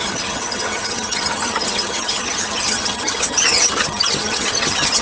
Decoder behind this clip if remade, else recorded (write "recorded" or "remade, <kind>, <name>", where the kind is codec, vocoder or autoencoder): remade, vocoder, HiFi-GAN